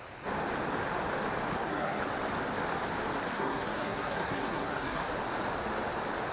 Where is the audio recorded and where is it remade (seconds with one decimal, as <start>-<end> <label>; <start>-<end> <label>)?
0.0-1.5 recorded; 1.5-2.0 remade; 2.0-3.3 recorded; 3.3-5.1 remade; 5.1-6.3 recorded